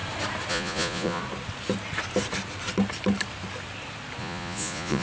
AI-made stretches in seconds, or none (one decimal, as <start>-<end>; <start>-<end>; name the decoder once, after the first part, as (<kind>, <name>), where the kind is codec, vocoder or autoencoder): 0.5-1.2 (vocoder, Vocos); 4.2-5.0